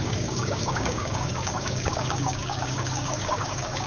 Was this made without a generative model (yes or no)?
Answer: no